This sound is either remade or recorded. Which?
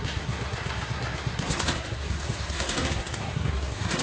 remade